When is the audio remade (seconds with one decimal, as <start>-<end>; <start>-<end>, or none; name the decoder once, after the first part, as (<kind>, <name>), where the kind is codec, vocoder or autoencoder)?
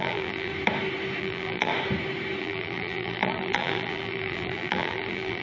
0.0-0.5 (vocoder, BigVGAN v2); 1.2-1.7; 2.4-5.4